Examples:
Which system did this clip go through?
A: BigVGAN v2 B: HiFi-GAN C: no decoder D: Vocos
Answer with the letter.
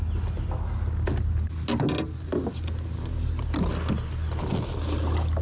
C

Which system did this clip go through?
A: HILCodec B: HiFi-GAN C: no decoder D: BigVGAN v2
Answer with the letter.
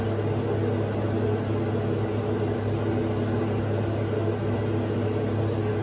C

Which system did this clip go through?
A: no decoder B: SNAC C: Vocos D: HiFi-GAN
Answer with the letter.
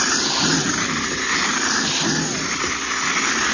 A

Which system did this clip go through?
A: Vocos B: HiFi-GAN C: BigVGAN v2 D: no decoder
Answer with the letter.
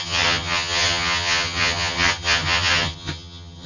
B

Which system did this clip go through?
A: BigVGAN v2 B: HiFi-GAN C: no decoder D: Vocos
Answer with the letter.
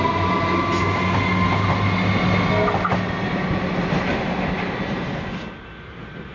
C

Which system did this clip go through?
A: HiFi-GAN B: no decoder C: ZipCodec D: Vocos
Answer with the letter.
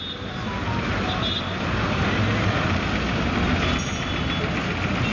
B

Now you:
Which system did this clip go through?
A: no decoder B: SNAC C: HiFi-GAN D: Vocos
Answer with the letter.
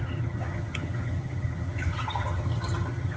C